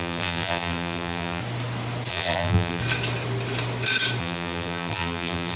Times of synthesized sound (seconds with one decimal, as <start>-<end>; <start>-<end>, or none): 0.0-1.4; 2.1-2.8; 4.2-5.6